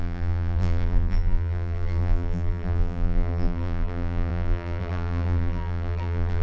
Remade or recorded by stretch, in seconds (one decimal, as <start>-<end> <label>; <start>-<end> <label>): 0.0-6.4 remade